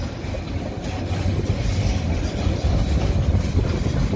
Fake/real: real